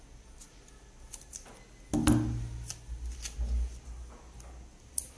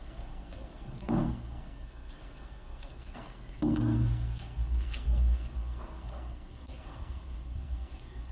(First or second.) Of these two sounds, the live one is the first